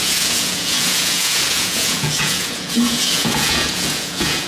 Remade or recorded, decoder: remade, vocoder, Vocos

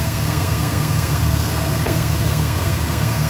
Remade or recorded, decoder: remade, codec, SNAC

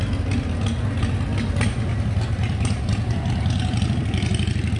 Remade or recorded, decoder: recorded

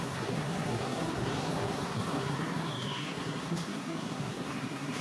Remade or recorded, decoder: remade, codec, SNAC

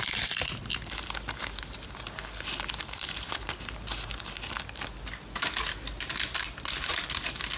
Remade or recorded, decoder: recorded